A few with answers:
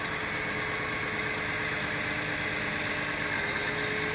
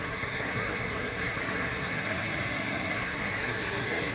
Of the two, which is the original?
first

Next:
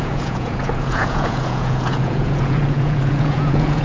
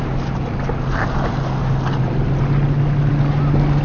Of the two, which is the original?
second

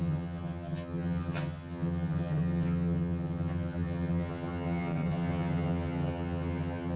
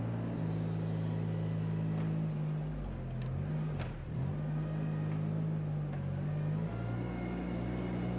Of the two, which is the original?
second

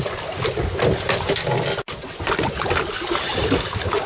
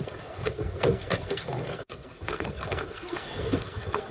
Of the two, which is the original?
first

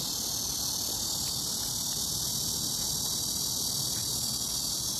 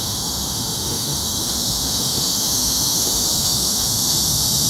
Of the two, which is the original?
first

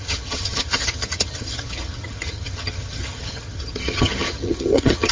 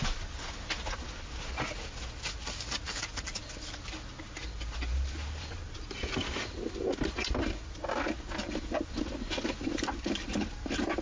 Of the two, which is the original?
second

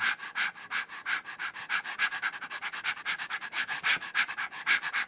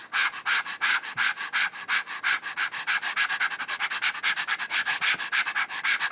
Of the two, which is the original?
second